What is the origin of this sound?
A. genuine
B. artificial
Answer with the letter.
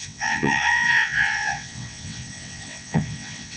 B